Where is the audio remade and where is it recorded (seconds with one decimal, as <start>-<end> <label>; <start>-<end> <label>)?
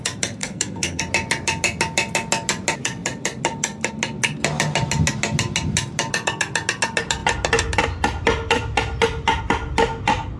0.0-0.4 recorded; 0.4-1.0 remade; 1.0-10.4 recorded